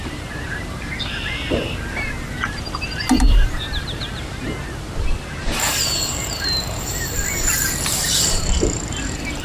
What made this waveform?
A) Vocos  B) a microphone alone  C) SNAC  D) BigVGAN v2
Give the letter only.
D